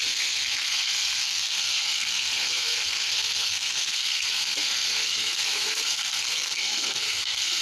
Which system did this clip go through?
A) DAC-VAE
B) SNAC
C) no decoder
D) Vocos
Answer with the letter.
B